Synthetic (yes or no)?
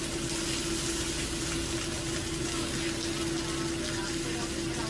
no